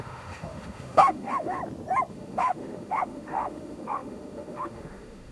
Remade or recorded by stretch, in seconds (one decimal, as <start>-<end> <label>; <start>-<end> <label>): 0.0-1.6 remade; 1.6-2.1 recorded; 2.1-5.3 remade

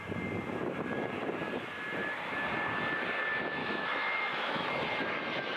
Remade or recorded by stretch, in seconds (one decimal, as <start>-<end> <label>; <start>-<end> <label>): 0.0-3.6 recorded; 3.6-4.7 remade; 4.7-5.6 recorded

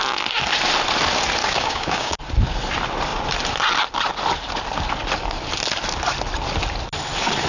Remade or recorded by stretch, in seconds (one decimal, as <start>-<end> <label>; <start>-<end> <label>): 0.0-1.4 recorded; 1.4-2.2 remade; 2.2-7.5 recorded

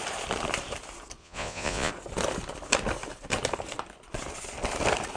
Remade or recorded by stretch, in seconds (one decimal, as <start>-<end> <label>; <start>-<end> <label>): 0.0-1.2 recorded; 1.2-1.9 remade; 1.9-5.2 recorded

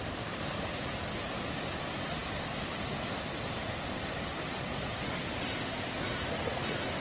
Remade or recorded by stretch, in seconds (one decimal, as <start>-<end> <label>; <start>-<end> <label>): 0.0-7.0 recorded

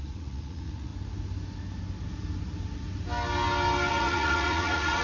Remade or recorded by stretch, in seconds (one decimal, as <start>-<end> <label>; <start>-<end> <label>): 0.0-0.9 remade; 0.9-3.9 recorded; 3.9-5.0 remade

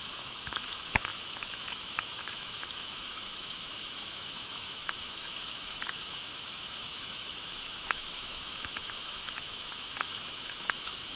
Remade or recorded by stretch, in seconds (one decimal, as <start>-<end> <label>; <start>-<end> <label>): 0.0-11.2 remade

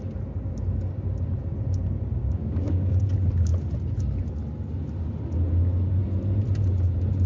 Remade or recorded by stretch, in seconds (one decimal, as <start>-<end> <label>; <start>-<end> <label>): 0.0-2.2 recorded; 2.2-3.1 remade; 3.1-7.3 recorded